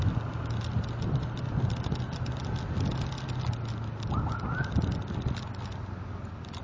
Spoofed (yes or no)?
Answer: no